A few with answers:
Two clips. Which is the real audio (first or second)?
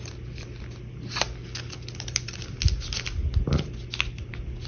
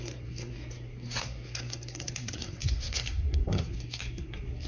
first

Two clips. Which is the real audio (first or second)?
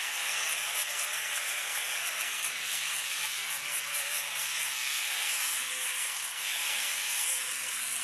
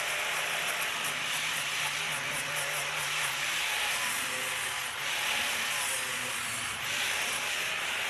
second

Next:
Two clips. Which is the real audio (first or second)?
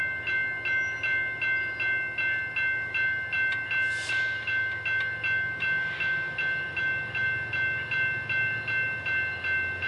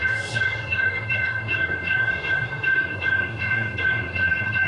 first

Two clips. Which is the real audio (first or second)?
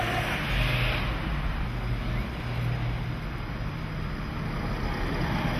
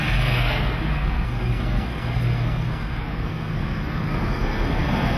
first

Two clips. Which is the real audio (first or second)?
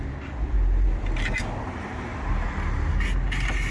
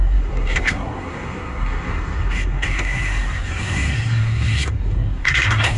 first